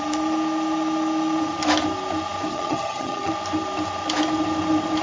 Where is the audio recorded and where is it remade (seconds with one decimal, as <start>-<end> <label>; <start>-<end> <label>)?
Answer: 0.0-2.5 recorded; 2.5-3.3 remade; 3.3-5.0 recorded